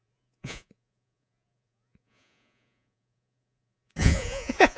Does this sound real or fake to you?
fake